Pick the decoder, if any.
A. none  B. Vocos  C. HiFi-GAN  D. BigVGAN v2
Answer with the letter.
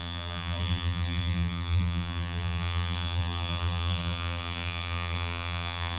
D